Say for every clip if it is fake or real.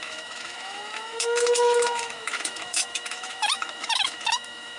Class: fake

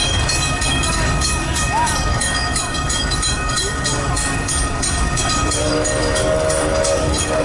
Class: fake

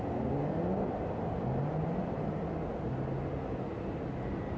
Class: real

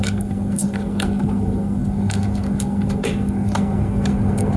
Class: fake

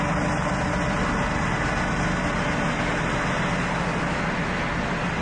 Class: real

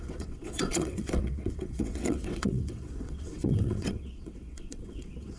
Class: fake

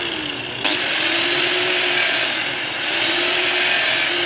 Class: real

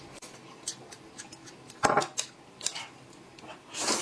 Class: real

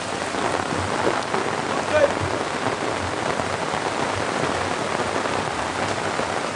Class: real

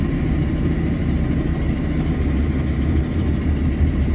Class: fake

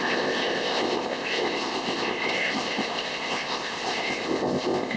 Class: fake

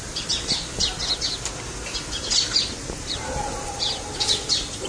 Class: real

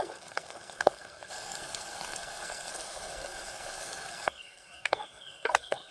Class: fake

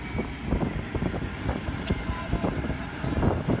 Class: real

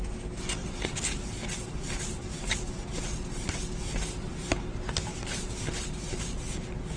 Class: real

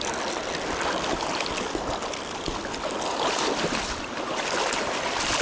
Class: real